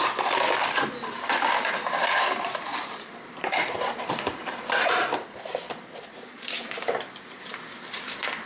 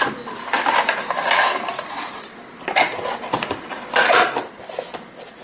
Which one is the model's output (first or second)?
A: first